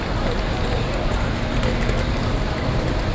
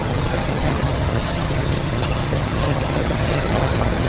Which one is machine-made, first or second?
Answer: second